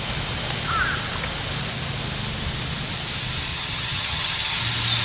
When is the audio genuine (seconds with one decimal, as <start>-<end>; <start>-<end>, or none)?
0.0-3.5; 4.6-5.0

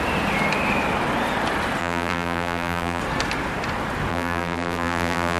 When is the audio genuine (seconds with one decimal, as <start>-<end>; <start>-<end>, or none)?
0.0-1.8; 3.0-4.1